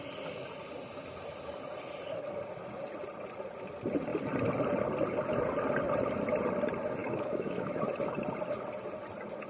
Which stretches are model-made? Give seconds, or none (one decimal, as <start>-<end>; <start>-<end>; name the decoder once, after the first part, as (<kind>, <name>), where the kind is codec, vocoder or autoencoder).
7.0-7.8 (autoencoder, DAC-VAE)